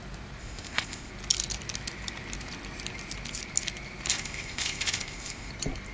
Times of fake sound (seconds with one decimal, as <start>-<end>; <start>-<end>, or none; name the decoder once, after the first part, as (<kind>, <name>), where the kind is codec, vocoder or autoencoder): 0.4-1.1 (codec, ZipCodec); 4.1-5.5